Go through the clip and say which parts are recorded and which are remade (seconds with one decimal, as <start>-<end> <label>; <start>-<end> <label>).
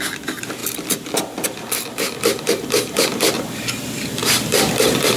0.0-0.6 recorded; 0.6-3.7 remade; 3.7-4.2 recorded; 4.2-5.2 remade